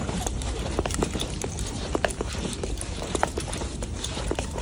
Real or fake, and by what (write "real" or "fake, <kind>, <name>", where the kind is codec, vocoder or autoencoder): fake, vocoder, BigVGAN v2